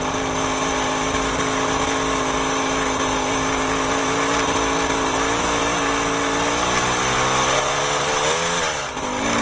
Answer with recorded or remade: recorded